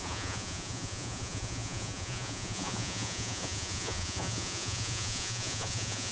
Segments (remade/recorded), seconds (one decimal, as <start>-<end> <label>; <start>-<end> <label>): 0.0-6.1 remade